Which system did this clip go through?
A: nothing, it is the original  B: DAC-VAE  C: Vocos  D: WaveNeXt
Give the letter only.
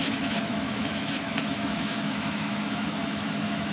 B